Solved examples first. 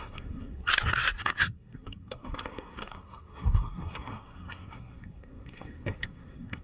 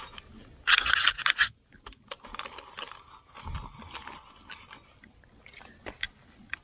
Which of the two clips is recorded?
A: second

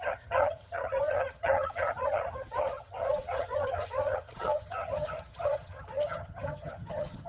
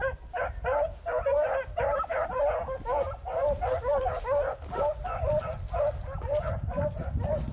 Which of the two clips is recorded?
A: second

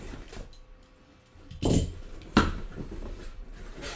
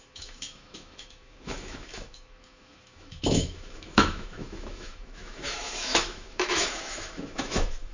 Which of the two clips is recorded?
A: first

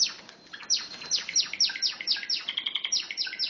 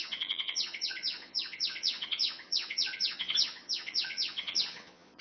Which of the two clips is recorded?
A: first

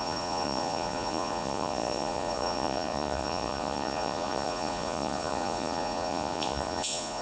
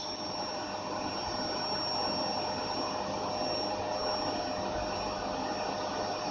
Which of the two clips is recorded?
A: second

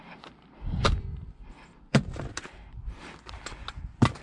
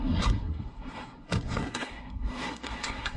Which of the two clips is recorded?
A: first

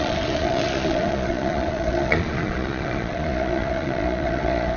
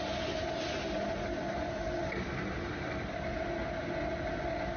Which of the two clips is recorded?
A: second